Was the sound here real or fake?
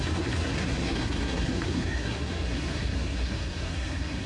fake